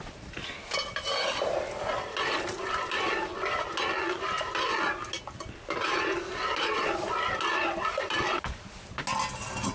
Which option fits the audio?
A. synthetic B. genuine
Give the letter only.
B